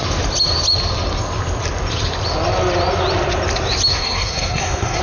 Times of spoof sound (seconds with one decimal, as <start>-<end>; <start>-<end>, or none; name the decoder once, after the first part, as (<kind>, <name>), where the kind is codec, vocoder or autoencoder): 3.9-5.0 (codec, SNAC)